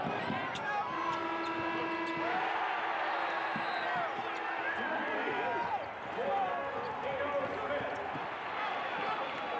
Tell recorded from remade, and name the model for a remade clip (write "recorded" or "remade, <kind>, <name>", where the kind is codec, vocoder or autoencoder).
recorded